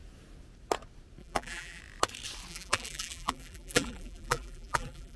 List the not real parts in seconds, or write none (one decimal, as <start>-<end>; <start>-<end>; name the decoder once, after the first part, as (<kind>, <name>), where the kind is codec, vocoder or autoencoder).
1.2-1.8 (vocoder, BigVGAN v2); 2.5-5.2